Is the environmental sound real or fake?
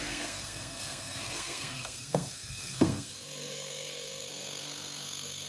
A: fake